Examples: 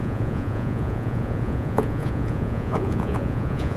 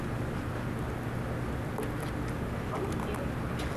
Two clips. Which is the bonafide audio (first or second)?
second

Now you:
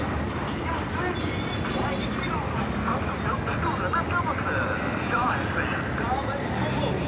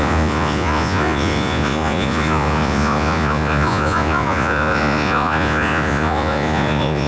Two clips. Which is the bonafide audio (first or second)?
first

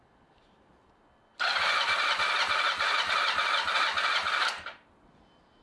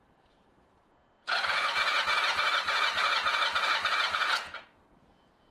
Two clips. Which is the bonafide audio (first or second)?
first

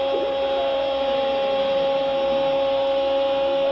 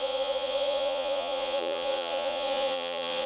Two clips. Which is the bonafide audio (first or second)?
first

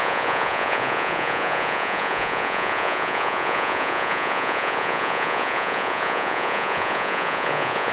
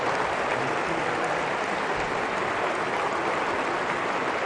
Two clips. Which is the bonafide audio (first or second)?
second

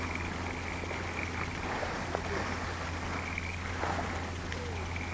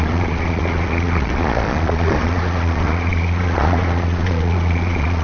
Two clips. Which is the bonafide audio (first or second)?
first